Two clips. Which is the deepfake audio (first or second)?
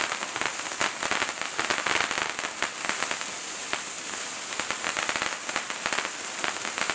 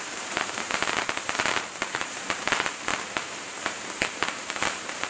second